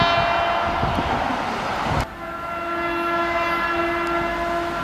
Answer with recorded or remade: recorded